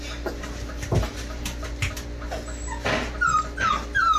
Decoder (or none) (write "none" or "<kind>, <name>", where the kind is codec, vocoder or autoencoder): none